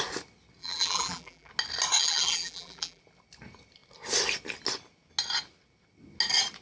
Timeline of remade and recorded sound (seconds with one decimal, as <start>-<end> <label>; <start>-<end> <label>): 0.0-0.6 recorded; 0.6-1.5 remade; 1.5-2.0 recorded; 2.0-3.0 remade; 3.0-6.6 recorded